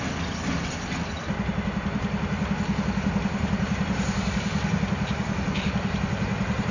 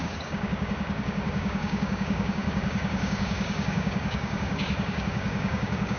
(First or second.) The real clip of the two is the first